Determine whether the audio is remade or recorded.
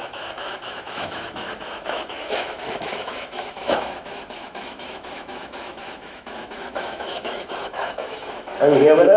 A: remade